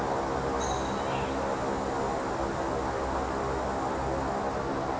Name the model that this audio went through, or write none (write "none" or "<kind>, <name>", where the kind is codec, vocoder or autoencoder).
none